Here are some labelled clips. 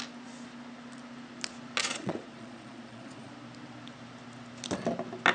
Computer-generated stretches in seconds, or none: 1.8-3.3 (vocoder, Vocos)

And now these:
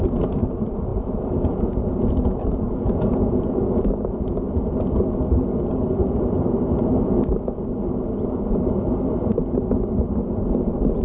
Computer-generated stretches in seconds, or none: 0.9-3.5 (vocoder, Vocos)